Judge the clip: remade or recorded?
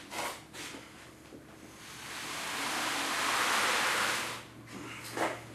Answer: recorded